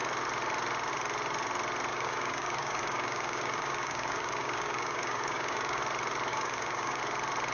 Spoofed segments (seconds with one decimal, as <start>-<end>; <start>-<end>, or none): 1.9-5.8; 6.3-7.0